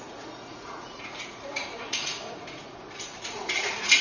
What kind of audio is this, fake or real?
fake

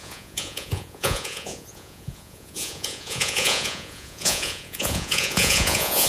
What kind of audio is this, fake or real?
fake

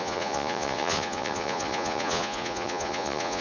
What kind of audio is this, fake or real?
fake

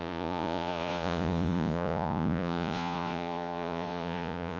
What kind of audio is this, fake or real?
fake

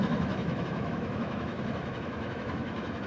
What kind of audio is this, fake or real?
fake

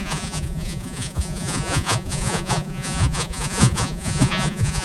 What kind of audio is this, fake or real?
fake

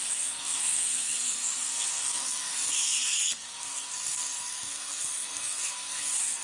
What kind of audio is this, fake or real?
fake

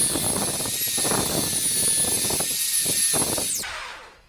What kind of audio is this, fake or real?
real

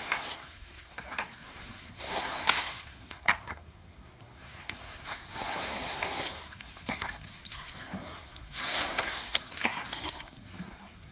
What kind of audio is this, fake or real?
fake